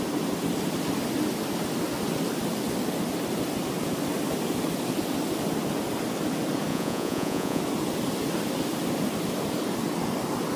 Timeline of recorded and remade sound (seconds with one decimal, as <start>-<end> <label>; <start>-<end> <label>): 0.0-6.7 recorded; 6.7-7.6 remade; 7.6-10.6 recorded